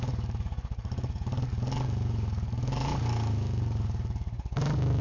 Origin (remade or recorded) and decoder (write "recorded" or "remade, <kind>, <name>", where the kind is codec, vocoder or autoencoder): remade, codec, DAC